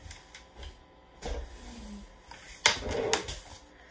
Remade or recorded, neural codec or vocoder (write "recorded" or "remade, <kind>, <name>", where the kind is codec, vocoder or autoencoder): recorded